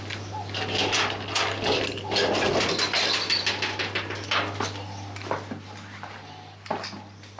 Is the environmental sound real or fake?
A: real